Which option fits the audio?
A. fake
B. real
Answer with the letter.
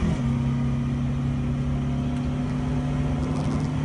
B